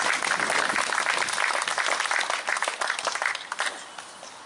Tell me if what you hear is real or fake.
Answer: real